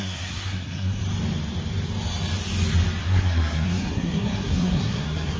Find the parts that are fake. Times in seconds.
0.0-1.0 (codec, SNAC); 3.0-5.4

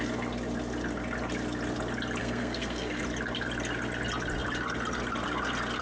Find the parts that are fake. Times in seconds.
2.2-3.0 (codec, SNAC)

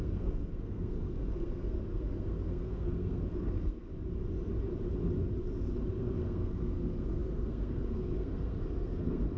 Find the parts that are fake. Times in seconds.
0.0-3.9 (codec, SNAC); 5.9-9.4